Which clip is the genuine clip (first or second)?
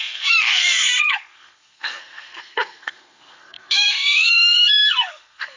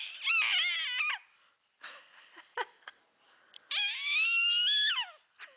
second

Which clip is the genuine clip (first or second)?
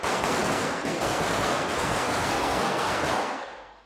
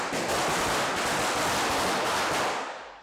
second